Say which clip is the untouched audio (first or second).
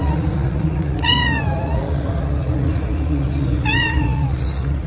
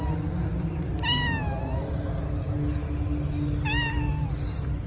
second